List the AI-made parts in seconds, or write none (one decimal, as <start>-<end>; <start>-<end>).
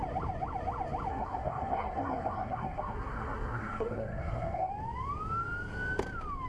1.1-4.7